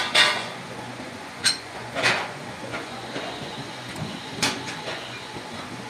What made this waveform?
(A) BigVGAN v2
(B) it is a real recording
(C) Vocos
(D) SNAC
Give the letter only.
C